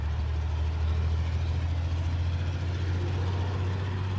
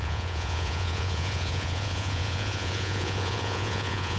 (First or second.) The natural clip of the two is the first